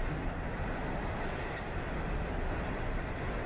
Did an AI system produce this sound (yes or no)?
no